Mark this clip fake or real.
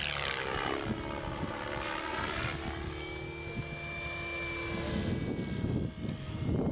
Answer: real